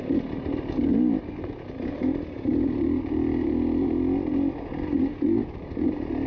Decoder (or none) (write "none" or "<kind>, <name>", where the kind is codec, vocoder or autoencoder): none